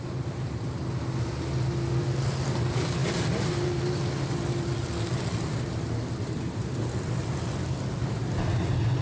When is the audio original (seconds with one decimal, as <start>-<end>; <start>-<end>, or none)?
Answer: 0.0-9.0